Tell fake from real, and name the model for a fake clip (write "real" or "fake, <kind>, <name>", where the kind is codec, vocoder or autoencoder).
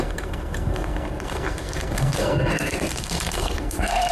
fake, codec, SNAC